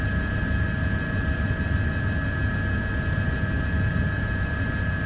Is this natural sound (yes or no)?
yes